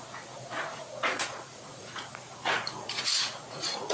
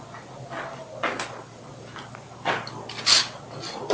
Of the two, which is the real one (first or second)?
second